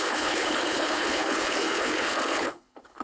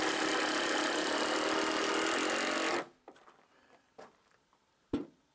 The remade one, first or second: first